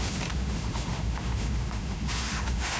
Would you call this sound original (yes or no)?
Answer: no